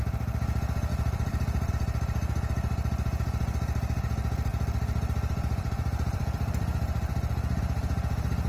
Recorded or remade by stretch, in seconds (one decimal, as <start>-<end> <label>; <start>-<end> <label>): 0.0-0.9 recorded; 0.9-1.7 remade; 1.7-4.5 recorded; 4.5-7.6 remade; 7.6-8.5 recorded